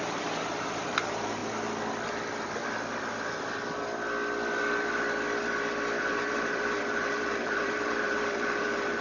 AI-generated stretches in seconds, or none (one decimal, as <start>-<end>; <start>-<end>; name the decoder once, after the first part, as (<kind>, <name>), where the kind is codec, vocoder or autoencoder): 0.0-1.4 (vocoder, BigVGAN v2); 6.0-9.0